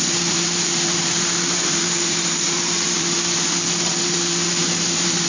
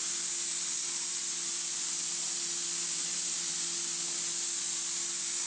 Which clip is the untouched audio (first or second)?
second